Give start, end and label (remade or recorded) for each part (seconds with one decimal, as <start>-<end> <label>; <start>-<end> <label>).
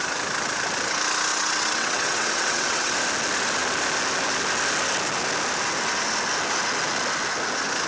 0.0-1.3 recorded; 1.3-2.9 remade; 2.9-7.9 recorded